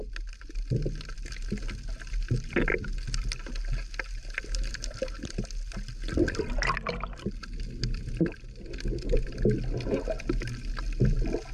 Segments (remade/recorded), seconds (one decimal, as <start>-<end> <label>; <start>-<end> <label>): 0.0-11.5 recorded